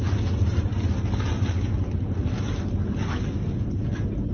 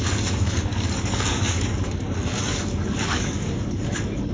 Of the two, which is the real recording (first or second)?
first